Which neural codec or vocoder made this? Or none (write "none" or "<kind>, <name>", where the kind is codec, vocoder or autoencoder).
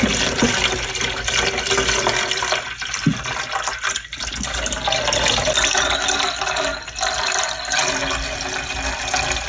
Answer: none